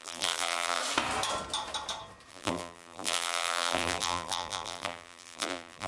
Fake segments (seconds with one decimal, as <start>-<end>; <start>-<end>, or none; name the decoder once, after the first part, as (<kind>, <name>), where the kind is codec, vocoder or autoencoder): 0.0-0.8 (vocoder, BigVGAN v2); 2.3-5.9